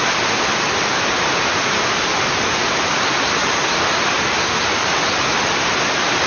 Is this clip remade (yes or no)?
no